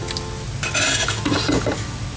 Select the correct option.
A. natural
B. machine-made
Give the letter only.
A